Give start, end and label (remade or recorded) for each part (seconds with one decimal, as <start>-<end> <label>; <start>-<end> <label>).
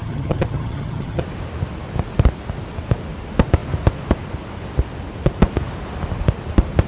0.0-1.2 remade; 1.2-6.9 recorded